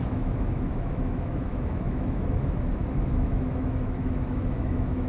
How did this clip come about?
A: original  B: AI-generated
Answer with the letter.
B